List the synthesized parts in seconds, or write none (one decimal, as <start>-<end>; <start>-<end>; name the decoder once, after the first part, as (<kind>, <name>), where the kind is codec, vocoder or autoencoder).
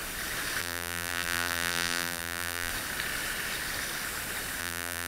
0.6-2.7 (vocoder, BigVGAN v2); 4.6-5.1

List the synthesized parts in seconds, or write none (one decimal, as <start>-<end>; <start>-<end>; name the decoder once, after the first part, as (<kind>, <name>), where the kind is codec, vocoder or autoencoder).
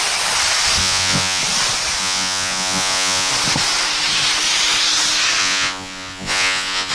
0.8-1.4 (vocoder, Vocos); 2.0-3.3; 5.4-6.9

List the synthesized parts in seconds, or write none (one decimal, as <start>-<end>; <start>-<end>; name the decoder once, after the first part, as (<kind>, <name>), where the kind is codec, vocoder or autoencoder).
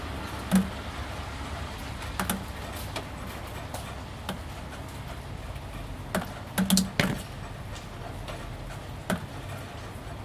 9.0-10.2 (vocoder, BigVGAN v2)